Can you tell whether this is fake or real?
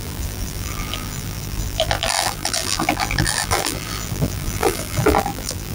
fake